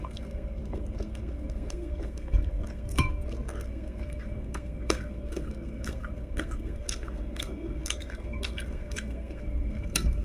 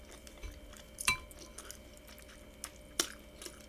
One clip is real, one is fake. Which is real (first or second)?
second